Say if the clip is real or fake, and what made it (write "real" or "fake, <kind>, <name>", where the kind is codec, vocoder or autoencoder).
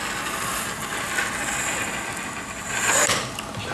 real